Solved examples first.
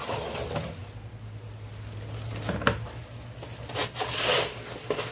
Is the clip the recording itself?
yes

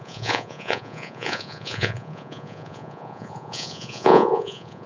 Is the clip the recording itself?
no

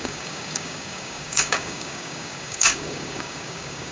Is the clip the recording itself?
no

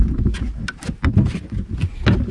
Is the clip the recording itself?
yes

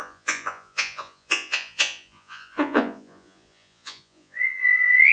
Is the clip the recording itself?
no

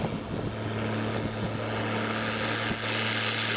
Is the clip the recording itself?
yes